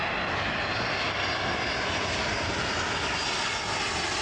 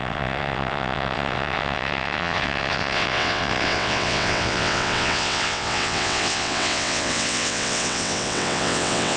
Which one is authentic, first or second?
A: first